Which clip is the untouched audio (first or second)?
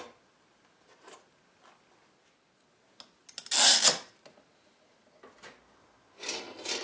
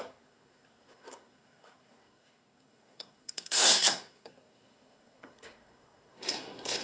first